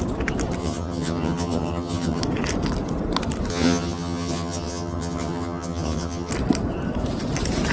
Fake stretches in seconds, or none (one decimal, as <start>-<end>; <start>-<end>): 0.6-2.2; 3.5-6.3